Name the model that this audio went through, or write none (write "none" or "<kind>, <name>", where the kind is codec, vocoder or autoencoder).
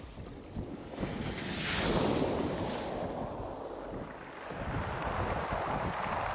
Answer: none